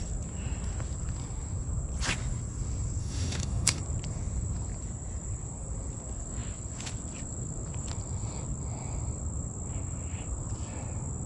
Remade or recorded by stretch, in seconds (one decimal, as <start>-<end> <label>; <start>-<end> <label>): 0.0-3.0 recorded; 3.0-3.8 remade; 3.8-11.3 recorded